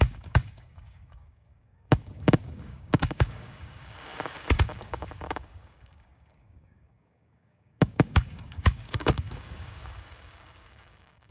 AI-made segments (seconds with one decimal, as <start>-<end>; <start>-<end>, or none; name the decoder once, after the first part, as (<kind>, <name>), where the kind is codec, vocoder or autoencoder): 0.0-11.3 (codec, DAC)